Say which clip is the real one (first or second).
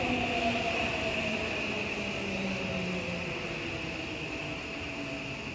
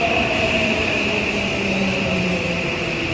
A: first